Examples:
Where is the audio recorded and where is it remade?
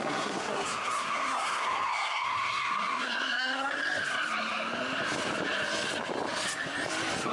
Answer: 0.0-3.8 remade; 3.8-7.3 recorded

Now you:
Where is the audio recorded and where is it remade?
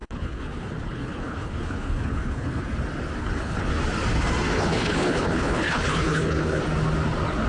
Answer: 0.0-2.6 remade; 2.6-3.2 recorded; 3.2-3.7 remade; 3.7-4.5 recorded; 4.5-6.6 remade; 6.6-7.5 recorded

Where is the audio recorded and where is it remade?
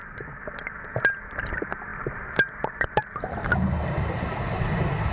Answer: 0.0-1.9 recorded; 1.9-5.1 remade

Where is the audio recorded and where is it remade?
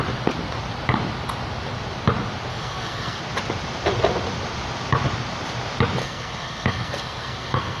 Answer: 0.0-2.5 recorded; 2.5-3.2 remade; 3.2-6.0 recorded; 6.0-7.8 remade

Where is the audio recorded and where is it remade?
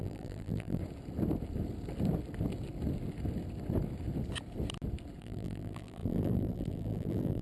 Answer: 0.0-0.8 remade; 0.8-5.2 recorded; 5.2-7.4 remade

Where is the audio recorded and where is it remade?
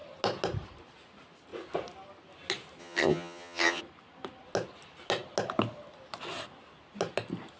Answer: 0.0-2.8 recorded; 2.8-3.8 remade; 3.8-7.6 recorded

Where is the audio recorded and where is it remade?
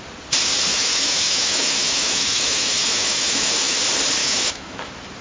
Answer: 0.0-0.7 recorded; 0.7-3.8 remade; 3.8-4.2 recorded; 4.2-4.8 remade; 4.8-5.2 recorded